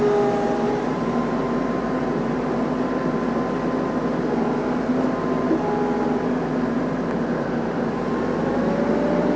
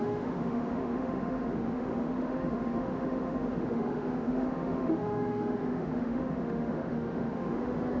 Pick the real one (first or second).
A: first